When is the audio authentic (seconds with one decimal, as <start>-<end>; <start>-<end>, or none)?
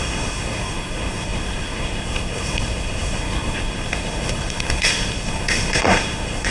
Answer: none